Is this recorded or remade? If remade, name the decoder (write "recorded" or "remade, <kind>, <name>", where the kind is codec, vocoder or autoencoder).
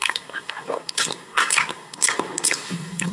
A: remade, codec, SNAC